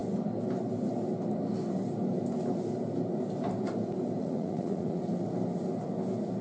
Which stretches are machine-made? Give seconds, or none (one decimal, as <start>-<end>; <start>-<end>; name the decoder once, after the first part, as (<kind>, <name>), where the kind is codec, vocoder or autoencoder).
4.2-5.0 (vocoder, Vocos)